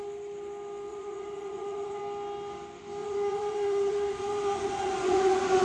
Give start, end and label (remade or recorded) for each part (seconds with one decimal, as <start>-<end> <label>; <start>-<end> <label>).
0.0-0.9 recorded; 0.9-2.0 remade; 2.0-3.0 recorded; 3.0-5.6 remade